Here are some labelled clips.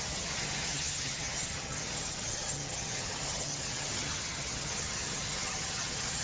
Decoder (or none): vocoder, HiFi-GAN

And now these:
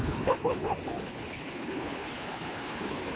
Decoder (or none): codec, HILCodec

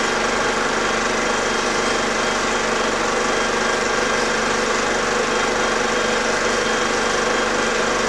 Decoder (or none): none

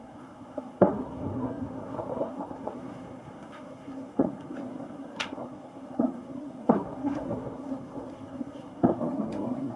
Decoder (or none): codec, SNAC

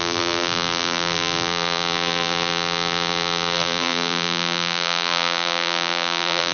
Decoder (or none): vocoder, BigVGAN v2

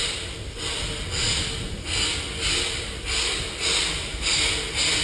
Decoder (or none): none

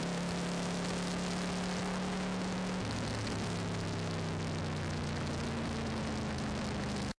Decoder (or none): none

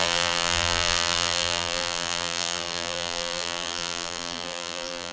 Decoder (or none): vocoder, BigVGAN v2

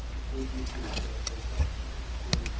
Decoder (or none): none